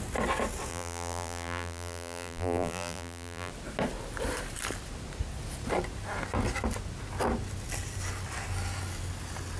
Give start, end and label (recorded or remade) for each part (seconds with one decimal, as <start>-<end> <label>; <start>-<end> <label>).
0.0-0.7 recorded; 0.7-3.5 remade; 3.5-9.6 recorded